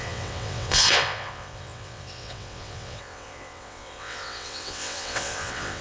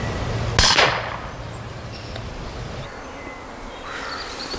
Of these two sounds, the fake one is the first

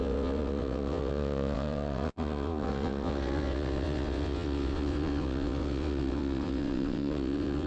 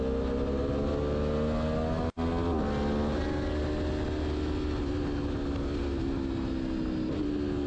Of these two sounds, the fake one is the first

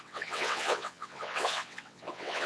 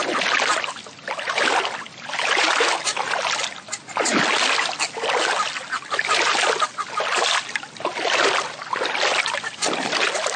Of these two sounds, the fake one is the first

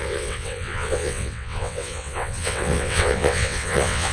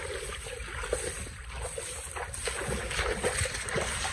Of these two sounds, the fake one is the first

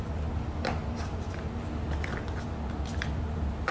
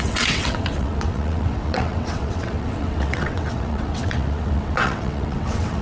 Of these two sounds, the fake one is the second